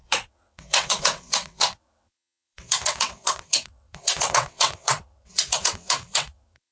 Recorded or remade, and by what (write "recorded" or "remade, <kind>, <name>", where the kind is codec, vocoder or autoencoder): remade, vocoder, WaveNeXt